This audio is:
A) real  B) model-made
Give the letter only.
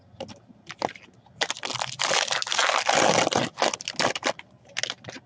A